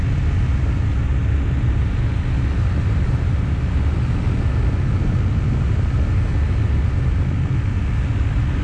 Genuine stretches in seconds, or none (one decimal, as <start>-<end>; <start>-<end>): 0.0-8.6